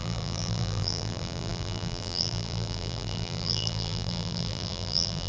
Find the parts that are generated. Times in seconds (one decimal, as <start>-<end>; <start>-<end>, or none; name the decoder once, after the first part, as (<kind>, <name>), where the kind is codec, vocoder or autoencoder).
0.0-5.3 (vocoder, BigVGAN v2)